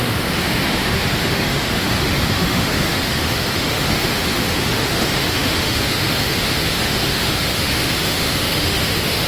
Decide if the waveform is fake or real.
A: fake